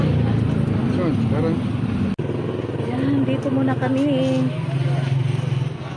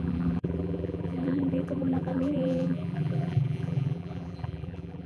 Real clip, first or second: first